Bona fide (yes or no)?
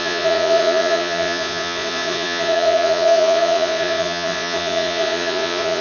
no